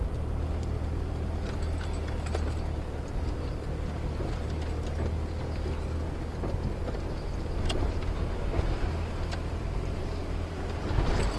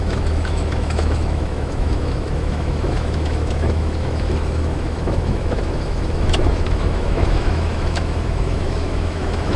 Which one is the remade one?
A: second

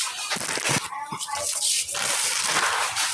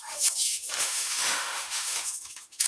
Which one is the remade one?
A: second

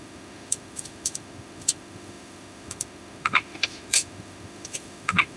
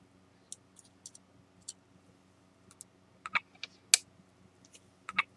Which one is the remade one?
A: first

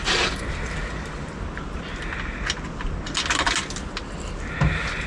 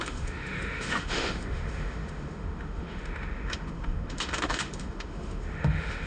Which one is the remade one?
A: second